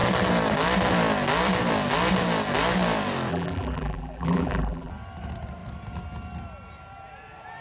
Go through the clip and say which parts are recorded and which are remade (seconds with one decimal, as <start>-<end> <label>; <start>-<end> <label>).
0.0-3.3 recorded; 3.3-4.9 remade; 4.9-7.6 recorded